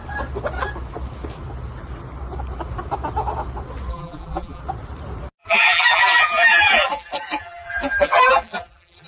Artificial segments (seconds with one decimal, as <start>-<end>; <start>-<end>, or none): 3.9-4.6; 5.4-9.1